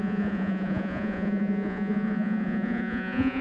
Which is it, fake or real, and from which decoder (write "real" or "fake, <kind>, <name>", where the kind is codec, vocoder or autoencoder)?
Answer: fake, vocoder, Vocos